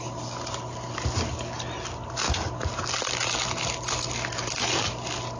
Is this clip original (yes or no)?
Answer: yes